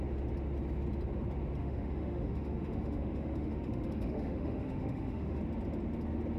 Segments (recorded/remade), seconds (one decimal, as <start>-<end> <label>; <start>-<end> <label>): 0.0-1.6 recorded; 1.6-5.4 remade; 5.4-6.4 recorded